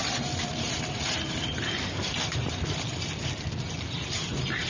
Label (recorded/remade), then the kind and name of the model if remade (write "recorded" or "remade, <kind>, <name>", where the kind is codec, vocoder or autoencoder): remade, vocoder, BigVGAN v2